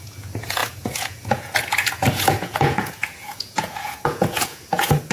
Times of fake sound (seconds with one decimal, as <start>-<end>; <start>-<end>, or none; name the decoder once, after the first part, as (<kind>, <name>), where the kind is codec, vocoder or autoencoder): 0.0-5.1 (vocoder, Vocos)